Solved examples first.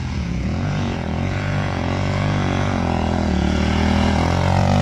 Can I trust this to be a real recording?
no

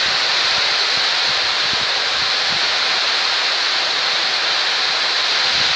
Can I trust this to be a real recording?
yes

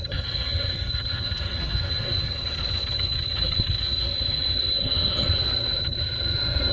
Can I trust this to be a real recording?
no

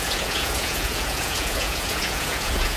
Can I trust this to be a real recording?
no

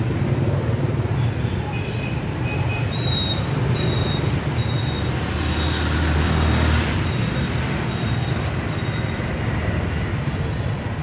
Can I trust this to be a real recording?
yes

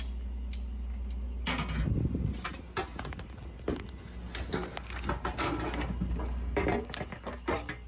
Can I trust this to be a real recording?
yes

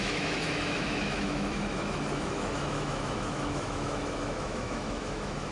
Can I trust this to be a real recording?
no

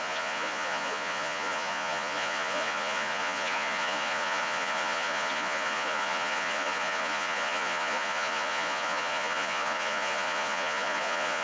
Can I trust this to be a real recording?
no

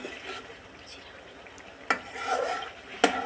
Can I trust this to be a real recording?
yes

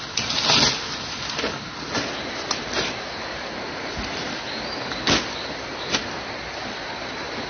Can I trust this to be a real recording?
yes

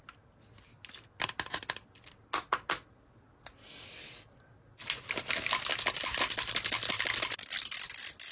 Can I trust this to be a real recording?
yes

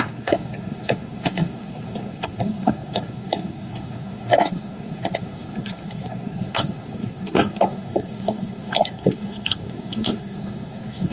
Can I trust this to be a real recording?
no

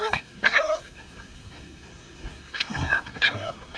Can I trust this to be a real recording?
no